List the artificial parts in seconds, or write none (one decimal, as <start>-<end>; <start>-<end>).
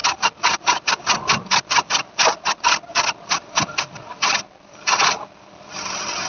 none